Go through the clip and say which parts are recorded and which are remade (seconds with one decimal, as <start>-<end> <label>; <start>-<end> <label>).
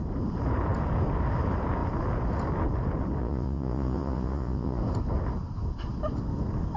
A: 0.0-3.2 recorded; 3.2-4.8 remade; 4.8-6.8 recorded